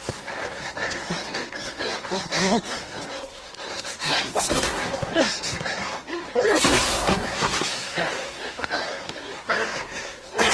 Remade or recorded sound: remade